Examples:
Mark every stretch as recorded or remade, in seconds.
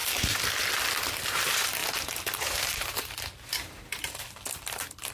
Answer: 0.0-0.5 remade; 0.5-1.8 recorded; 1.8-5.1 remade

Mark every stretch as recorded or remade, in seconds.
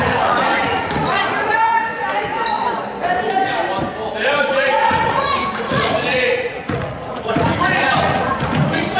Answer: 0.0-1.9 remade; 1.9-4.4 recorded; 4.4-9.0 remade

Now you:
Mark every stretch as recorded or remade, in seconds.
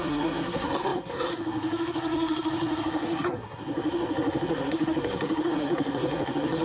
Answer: 0.0-6.6 remade